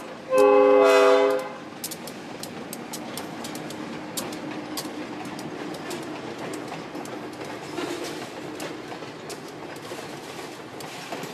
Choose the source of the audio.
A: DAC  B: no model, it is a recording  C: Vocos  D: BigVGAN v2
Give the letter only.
B